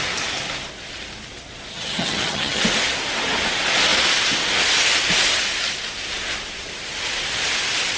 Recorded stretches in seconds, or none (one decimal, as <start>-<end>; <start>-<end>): 0.0-1.7; 2.6-8.0